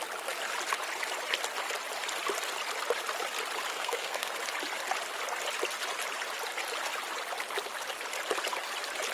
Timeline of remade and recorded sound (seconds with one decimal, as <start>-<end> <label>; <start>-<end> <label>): 0.0-3.7 recorded; 3.7-4.3 remade; 4.3-9.1 recorded